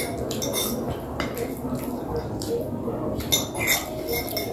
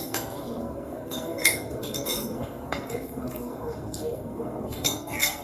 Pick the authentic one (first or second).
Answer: first